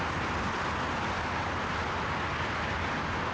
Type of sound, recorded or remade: recorded